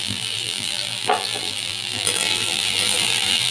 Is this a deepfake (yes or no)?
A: yes